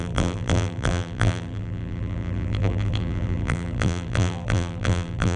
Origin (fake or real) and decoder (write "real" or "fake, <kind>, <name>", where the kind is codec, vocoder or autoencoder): fake, vocoder, BigVGAN v2